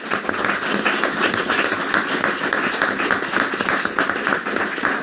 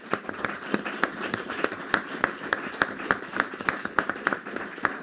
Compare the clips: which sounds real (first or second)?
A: first